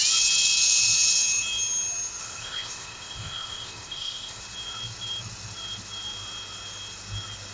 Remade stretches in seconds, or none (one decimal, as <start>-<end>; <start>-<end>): 2.2-4.4